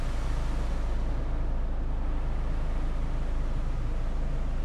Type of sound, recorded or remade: recorded